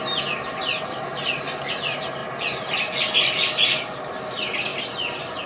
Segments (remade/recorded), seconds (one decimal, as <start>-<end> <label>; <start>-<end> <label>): 0.0-4.7 recorded; 4.7-5.5 remade